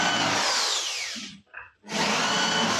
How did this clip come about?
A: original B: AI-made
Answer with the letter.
A